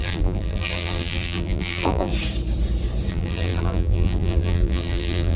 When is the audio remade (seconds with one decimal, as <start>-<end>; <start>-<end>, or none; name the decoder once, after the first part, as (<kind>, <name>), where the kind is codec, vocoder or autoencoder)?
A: 0.0-2.1 (vocoder, BigVGAN v2); 3.1-5.4